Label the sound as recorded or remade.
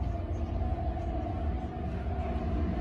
recorded